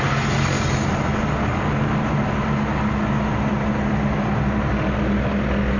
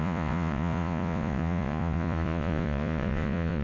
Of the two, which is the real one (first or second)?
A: first